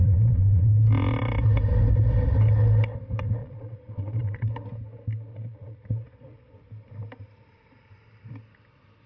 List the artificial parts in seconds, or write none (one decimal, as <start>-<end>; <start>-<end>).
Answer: 0.0-0.7; 3.4-4.5; 5.3-6.5